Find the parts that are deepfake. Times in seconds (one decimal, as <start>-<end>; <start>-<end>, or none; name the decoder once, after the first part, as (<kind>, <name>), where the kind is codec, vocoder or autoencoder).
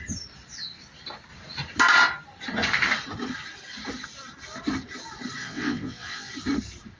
5.4-6.3 (vocoder, WaveNeXt)